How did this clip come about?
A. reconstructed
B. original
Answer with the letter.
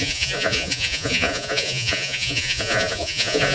A